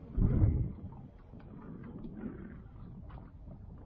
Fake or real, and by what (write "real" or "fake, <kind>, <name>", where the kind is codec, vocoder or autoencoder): real